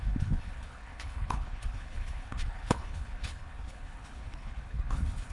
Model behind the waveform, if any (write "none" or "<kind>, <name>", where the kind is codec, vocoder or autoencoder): codec, HILCodec